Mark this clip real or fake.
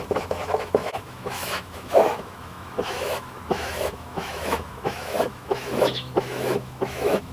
fake